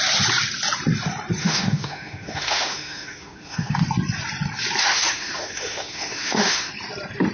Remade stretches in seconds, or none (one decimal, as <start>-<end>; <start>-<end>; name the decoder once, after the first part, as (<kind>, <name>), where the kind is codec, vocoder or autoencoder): 1.4-3.7 (autoencoder, DAC-VAE); 4.8-6.7